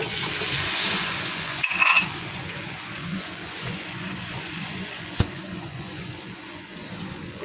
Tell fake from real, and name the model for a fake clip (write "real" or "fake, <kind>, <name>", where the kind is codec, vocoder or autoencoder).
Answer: fake, vocoder, Vocos